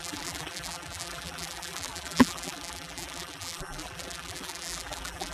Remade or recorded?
remade